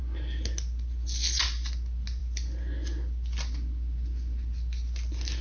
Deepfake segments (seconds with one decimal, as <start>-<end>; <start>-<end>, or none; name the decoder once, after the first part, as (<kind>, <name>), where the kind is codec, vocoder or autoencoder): none

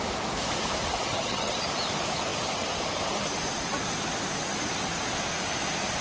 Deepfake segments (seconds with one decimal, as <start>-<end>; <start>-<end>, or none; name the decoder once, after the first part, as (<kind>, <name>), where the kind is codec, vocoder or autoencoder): 1.0-1.5 (vocoder, HiFi-GAN)

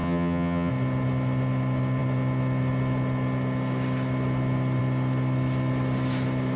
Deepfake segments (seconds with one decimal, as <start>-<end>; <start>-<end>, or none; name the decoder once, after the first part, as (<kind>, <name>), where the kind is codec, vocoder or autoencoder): 0.0-0.7 (vocoder, HiFi-GAN)